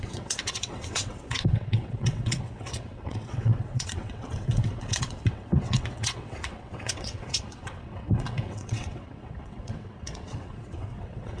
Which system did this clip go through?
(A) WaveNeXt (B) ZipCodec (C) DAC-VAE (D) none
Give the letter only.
A